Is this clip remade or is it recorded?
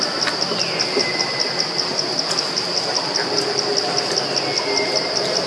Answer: recorded